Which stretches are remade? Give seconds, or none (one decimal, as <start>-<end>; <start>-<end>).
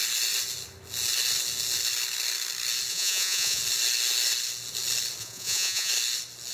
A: 2.9-3.6; 5.2-5.9